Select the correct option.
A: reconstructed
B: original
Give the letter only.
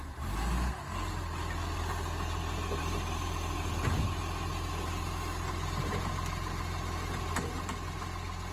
B